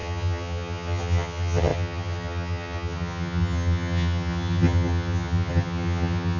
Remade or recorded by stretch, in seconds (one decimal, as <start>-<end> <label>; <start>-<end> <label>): 0.0-6.4 remade